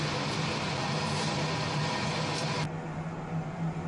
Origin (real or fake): real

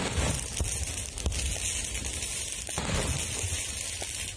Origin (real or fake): real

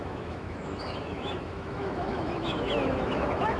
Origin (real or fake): fake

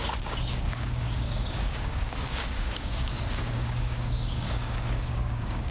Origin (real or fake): fake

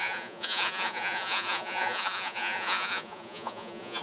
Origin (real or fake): fake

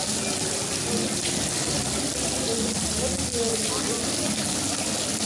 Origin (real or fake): real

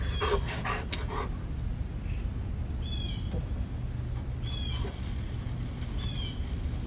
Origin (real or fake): real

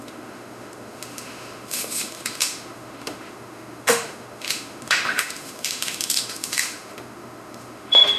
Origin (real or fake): fake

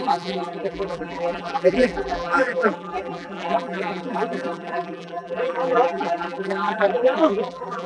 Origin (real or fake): fake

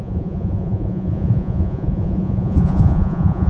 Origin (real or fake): fake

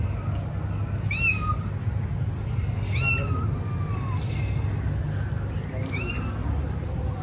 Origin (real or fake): real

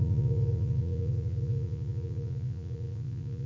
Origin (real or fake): fake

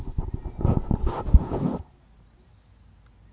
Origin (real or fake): real